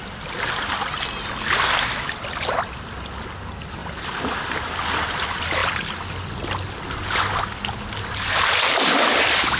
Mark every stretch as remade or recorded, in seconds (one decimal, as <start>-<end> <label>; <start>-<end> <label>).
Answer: 0.0-3.8 recorded; 3.8-4.8 remade; 4.8-5.6 recorded; 5.6-6.3 remade; 6.3-9.6 recorded